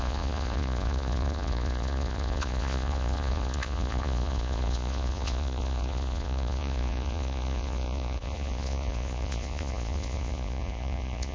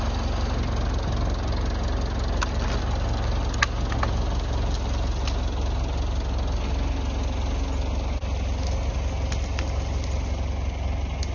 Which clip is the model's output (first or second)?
first